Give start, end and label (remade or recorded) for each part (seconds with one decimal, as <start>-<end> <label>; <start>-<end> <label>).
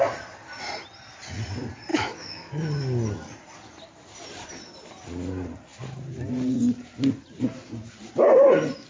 0.0-1.9 recorded; 1.9-2.5 remade; 2.5-8.9 recorded